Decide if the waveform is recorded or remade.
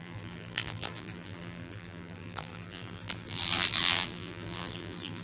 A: remade